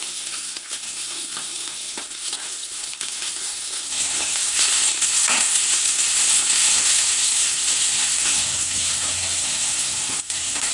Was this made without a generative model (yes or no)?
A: no